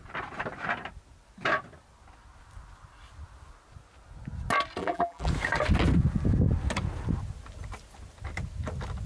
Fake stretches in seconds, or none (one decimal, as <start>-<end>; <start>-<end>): 4.8-5.3

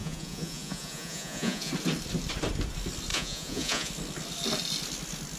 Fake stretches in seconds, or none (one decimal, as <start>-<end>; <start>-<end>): 0.0-1.7; 3.1-3.9

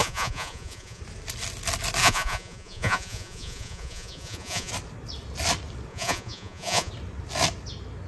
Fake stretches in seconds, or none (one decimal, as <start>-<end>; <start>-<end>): 0.0-1.0; 2.0-4.7; 5.9-6.9

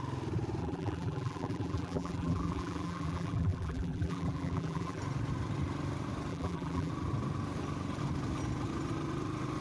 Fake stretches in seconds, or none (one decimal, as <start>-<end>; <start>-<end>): 0.6-5.0; 6.3-6.9

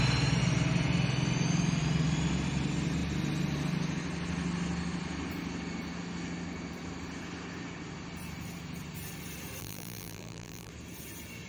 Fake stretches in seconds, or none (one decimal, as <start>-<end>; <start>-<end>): 9.6-10.7

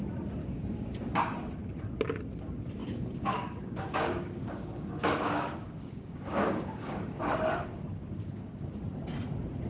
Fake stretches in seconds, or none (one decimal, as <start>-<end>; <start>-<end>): 0.4-1.6; 2.8-7.2; 7.9-8.8

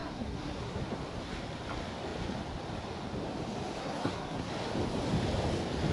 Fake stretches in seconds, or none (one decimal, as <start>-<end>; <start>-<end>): 0.0-0.8; 3.8-4.5